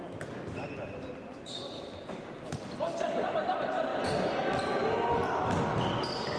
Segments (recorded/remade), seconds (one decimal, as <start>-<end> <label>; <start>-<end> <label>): 0.0-6.4 recorded